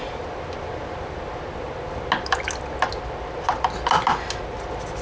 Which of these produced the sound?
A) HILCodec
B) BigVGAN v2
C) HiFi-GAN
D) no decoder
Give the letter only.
D